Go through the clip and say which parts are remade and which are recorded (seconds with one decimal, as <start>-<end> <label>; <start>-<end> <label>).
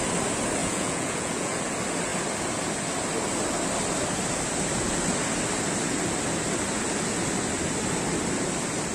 0.0-0.6 recorded; 0.6-1.6 remade; 1.6-8.9 recorded